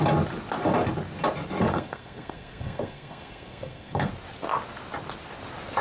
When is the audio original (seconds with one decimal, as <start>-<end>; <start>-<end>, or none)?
0.0-1.7; 4.1-5.8